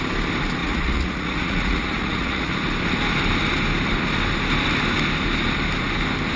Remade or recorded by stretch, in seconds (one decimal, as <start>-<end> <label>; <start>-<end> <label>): 0.0-0.6 recorded; 0.6-2.5 remade; 2.5-6.4 recorded